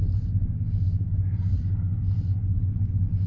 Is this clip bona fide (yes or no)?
yes